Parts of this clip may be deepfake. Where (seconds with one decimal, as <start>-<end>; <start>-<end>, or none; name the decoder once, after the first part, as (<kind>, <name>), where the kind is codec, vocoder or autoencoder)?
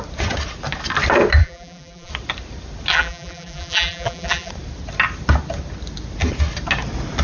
1.4-2.1 (vocoder, BigVGAN v2); 2.9-4.5